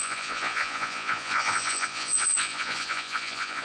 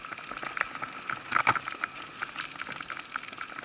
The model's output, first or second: first